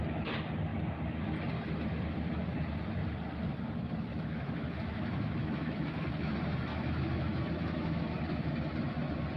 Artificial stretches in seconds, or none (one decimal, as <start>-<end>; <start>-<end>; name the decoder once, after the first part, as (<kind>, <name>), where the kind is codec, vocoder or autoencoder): 4.1-6.3 (autoencoder, DAC-VAE); 6.7-8.0